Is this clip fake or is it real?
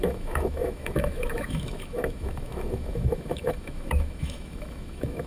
fake